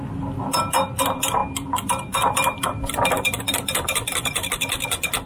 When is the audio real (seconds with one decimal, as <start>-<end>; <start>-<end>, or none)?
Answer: 0.0-1.4; 4.5-5.3